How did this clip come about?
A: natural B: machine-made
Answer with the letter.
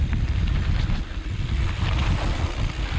A